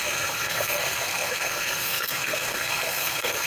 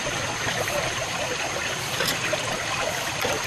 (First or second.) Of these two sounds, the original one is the second